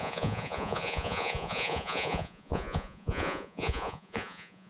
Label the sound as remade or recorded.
remade